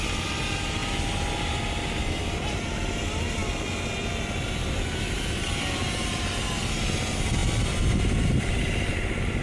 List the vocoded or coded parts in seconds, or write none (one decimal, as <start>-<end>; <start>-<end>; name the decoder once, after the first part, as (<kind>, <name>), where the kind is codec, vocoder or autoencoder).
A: none

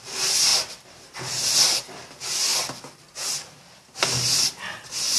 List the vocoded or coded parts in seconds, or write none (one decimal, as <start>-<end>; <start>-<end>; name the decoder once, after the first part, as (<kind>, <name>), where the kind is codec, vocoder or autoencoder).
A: none

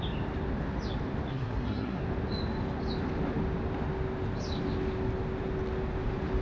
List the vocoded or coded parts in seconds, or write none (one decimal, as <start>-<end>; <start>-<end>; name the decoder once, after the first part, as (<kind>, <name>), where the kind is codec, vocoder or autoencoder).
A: 1.3-2.0 (codec, SNAC)

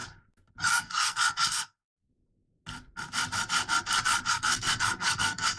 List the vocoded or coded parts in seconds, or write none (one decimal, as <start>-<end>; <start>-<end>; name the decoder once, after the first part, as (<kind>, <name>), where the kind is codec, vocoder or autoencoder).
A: 0.6-1.8 (codec, SNAC); 4.3-5.6

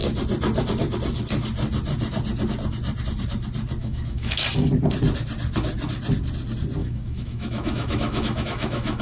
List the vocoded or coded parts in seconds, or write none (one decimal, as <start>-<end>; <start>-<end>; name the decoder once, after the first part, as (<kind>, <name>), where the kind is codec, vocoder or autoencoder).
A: 3.8-4.4 (autoencoder, DAC-VAE); 6.8-9.0

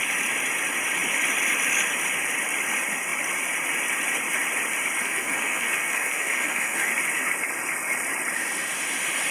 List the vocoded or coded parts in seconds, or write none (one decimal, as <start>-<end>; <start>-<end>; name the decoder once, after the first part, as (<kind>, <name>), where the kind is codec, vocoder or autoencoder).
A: 5.0-6.9 (codec, SNAC)

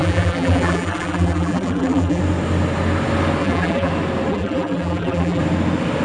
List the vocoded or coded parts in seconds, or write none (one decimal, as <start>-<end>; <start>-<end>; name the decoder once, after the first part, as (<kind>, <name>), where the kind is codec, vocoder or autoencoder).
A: 0.0-2.2 (vocoder, BigVGAN v2); 3.4-3.9; 4.3-5.4